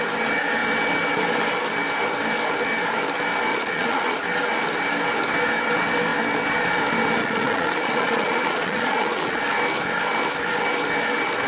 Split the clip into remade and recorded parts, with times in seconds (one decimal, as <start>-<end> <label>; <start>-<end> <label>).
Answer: 0.0-3.5 recorded; 3.5-4.2 remade; 4.2-7.2 recorded; 7.2-9.4 remade; 9.4-11.5 recorded